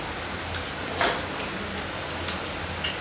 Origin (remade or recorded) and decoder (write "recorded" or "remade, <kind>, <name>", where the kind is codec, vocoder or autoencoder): recorded